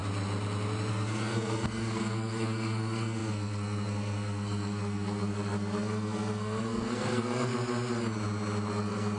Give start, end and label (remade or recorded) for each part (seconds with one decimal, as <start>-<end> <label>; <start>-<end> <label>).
0.0-0.9 recorded; 0.9-7.5 remade; 7.5-8.7 recorded; 8.7-9.2 remade